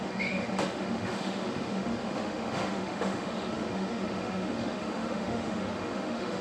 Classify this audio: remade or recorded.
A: remade